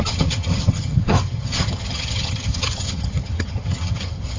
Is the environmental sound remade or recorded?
remade